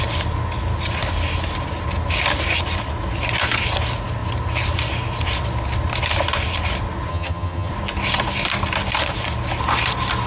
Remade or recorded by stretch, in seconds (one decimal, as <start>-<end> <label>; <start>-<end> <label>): 0.0-7.1 recorded; 7.1-7.7 remade; 7.7-10.3 recorded